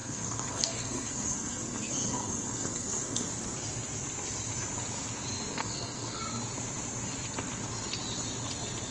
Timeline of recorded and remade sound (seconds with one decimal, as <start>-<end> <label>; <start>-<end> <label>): 0.0-3.3 remade; 3.3-5.6 recorded; 5.6-6.2 remade; 6.2-8.9 recorded